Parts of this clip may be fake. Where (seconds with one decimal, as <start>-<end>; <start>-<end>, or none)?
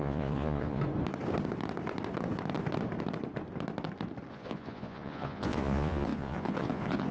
0.0-0.8; 4.3-7.1